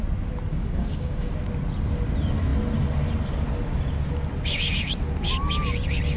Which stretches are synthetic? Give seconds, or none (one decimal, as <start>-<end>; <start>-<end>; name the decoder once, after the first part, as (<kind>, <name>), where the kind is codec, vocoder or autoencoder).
0.5-1.3 (codec, DAC)